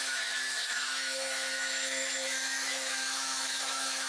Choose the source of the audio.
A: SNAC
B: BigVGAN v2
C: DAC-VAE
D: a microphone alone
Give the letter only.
C